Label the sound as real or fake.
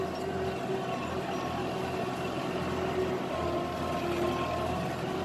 real